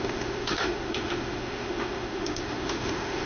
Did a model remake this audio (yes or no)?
yes